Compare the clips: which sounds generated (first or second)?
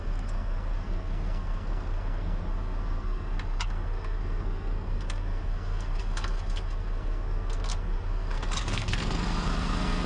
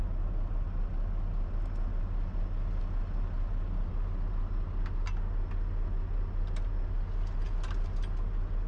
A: first